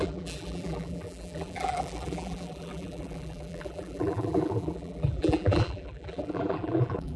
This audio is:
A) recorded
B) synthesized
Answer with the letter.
B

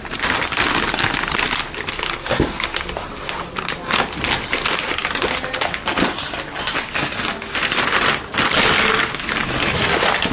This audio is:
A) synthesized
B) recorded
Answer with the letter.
B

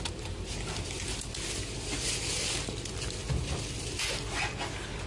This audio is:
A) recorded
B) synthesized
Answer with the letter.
A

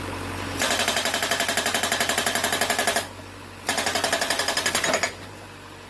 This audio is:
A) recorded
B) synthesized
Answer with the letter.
A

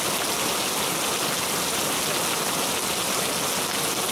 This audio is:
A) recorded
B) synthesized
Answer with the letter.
A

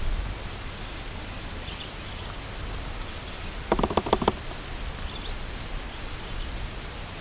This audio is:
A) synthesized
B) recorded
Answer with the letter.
B